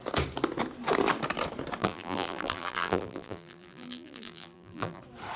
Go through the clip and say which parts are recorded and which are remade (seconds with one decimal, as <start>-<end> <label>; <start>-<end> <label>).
0.0-1.8 recorded; 1.8-5.0 remade; 5.0-5.4 recorded